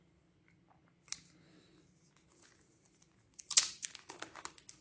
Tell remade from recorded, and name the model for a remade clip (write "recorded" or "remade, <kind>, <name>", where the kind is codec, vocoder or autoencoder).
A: recorded